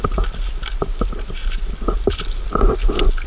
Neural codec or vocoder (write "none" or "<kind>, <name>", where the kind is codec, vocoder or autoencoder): none